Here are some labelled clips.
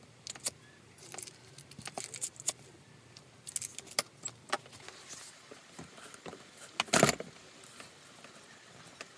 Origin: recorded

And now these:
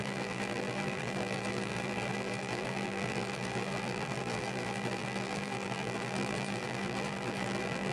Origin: remade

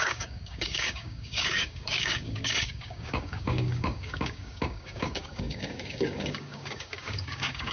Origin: remade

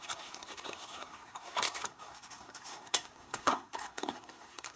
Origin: remade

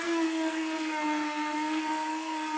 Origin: remade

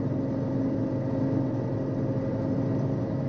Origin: recorded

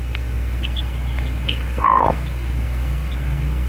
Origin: remade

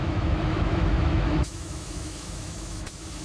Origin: remade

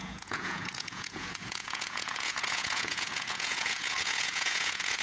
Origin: remade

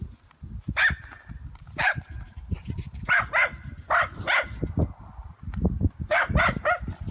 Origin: recorded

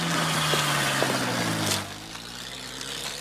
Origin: recorded